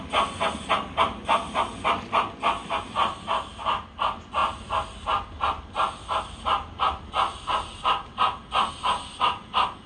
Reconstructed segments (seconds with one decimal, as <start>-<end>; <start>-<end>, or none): none

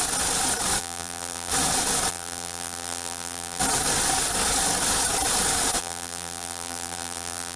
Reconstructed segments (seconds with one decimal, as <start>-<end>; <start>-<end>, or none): 0.8-1.5; 2.1-3.6; 5.8-7.6

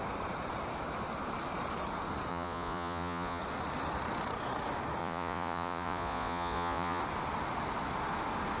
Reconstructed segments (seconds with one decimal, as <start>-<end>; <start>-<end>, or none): 2.3-3.4; 5.0-7.0

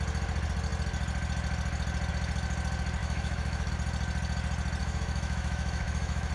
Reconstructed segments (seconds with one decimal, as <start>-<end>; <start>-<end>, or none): 3.0-3.7; 4.8-6.3

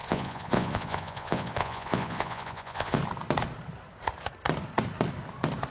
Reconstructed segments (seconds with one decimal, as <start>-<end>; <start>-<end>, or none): 0.0-3.0

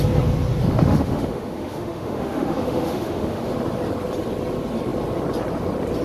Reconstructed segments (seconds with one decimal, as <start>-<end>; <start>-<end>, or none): 0.6-3.5

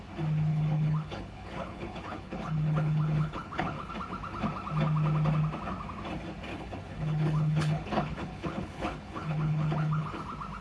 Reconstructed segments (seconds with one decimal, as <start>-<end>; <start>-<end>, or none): 0.5-3.9; 6.5-10.2

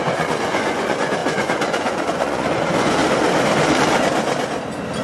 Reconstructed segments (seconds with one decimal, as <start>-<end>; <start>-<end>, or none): 0.0-3.0